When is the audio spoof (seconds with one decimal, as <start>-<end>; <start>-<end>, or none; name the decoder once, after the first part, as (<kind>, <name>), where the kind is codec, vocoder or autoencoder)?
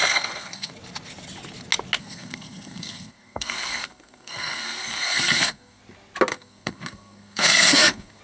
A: 0.0-0.7 (codec, SNAC); 2.0-5.8; 6.3-8.2